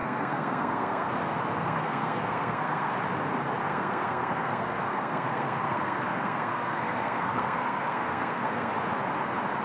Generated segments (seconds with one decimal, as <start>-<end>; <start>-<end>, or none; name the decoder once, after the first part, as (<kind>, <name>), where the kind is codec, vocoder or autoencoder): 0.0-1.1 (codec, SNAC); 1.5-2.9; 3.6-8.7